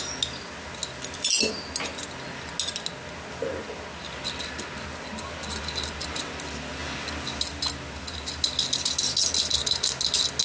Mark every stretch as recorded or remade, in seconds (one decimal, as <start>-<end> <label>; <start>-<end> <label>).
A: 0.0-10.4 recorded